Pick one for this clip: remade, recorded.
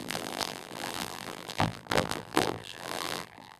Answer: remade